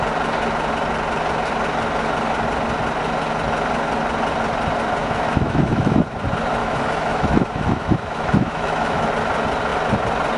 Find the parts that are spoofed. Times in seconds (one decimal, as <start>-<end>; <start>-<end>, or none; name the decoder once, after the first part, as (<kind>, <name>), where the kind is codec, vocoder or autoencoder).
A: 5.0-6.0 (autoencoder, DAC-VAE); 6.6-9.1